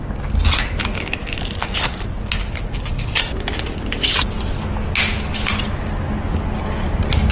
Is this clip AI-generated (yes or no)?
no